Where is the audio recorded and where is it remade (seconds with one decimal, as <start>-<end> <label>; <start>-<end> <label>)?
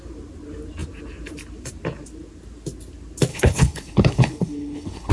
0.0-3.3 recorded; 3.3-5.1 remade